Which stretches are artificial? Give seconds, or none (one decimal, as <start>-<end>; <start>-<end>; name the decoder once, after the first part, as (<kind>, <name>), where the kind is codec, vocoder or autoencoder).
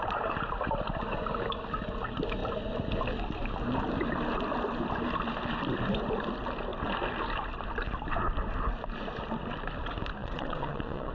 10.2-11.1 (vocoder, WaveNeXt)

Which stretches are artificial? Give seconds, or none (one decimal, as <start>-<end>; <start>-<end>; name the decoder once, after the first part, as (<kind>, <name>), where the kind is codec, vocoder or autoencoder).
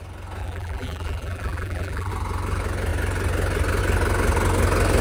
0.4-2.1 (vocoder, BigVGAN v2)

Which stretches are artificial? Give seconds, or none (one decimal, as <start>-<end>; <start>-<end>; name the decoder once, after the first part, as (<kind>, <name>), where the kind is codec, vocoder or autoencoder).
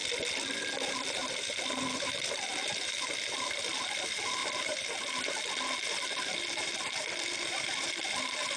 none